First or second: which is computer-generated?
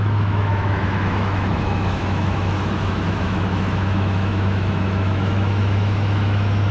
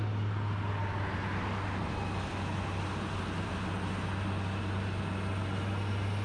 first